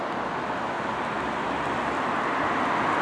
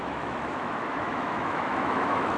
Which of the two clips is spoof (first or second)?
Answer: second